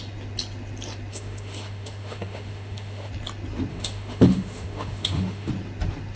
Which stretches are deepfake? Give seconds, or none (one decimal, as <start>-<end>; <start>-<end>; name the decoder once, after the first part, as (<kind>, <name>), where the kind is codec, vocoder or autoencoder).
1.1-3.1 (autoencoder, DAC-VAE); 3.7-5.5